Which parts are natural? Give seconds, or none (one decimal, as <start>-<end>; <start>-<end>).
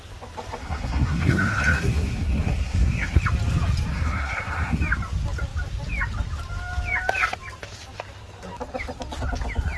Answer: 0.0-0.6; 3.2-3.9; 4.8-9.8